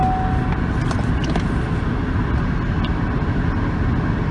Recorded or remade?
recorded